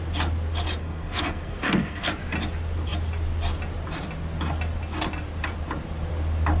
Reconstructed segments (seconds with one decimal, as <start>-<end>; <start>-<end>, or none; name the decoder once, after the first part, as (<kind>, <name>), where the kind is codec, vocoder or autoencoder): 0.8-2.1 (codec, SNAC)